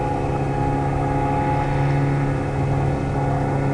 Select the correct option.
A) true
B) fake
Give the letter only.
A